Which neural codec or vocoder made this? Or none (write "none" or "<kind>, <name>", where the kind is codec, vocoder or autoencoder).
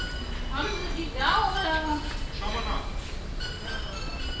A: none